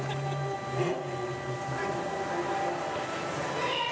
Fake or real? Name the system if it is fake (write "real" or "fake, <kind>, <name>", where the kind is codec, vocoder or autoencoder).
real